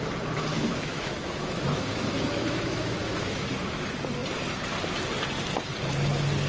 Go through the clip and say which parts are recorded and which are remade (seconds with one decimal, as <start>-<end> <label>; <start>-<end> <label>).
0.0-0.5 recorded; 0.5-3.8 remade; 3.8-6.5 recorded